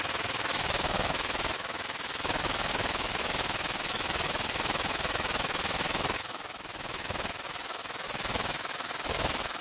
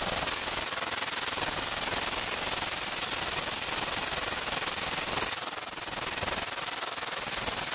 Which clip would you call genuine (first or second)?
second